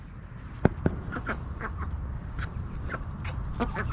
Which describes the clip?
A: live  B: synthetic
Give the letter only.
A